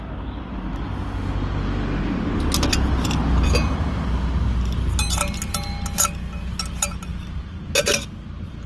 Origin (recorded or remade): recorded